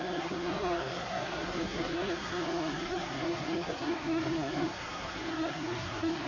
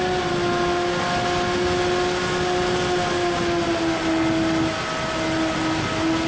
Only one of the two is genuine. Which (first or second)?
second